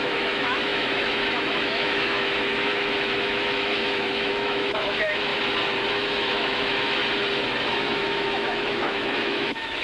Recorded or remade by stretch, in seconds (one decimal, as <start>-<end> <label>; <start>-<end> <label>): 0.0-5.3 remade; 5.3-5.9 recorded; 5.9-7.0 remade; 7.0-7.8 recorded; 7.8-9.8 remade